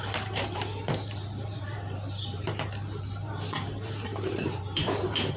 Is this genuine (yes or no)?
no